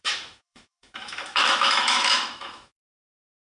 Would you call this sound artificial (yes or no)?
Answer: yes